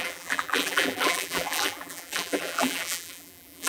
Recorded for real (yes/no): no